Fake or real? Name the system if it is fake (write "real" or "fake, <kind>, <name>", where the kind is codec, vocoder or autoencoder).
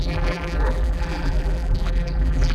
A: fake, vocoder, BigVGAN v2